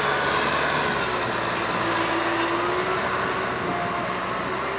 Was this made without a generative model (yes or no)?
yes